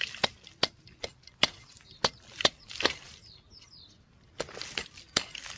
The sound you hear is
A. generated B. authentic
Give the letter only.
B